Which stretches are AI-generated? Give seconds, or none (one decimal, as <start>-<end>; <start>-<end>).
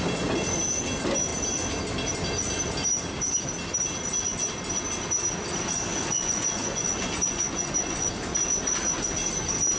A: 5.9-8.1